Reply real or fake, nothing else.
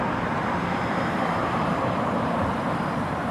fake